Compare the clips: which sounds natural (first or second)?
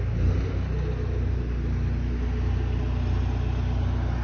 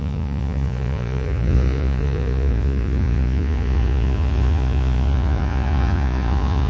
first